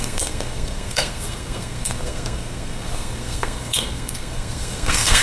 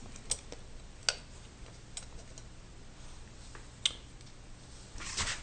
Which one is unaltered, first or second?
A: second